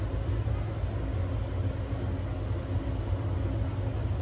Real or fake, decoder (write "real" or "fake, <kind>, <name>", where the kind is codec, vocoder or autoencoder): real